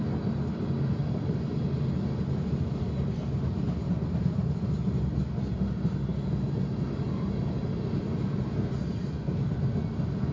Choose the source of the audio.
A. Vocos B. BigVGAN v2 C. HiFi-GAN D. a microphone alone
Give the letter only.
D